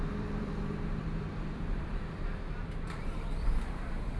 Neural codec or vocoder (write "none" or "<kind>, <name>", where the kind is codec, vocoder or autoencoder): vocoder, BigVGAN v2